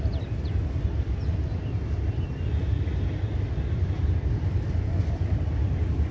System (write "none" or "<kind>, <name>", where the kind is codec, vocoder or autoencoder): none